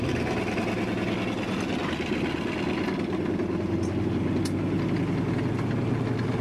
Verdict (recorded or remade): recorded